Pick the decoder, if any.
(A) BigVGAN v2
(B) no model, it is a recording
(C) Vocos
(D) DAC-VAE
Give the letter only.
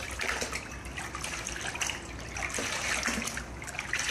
B